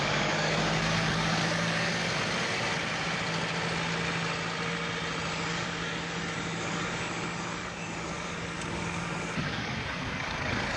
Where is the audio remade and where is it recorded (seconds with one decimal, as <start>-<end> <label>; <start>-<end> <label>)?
0.0-1.9 remade; 1.9-5.3 recorded; 5.3-10.8 remade